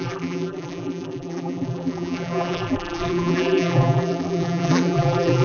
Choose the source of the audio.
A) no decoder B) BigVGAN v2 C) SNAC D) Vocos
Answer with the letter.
B